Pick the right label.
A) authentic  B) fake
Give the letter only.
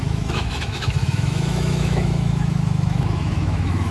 B